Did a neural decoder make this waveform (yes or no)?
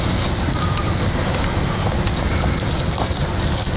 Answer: no